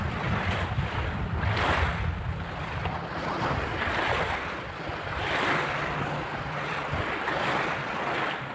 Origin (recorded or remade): recorded